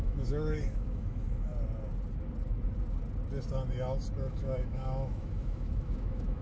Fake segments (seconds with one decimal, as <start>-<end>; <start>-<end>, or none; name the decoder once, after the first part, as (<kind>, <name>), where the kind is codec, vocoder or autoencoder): 0.0-1.5 (autoencoder, DAC-VAE); 4.3-6.4